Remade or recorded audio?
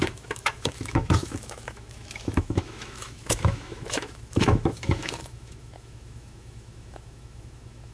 remade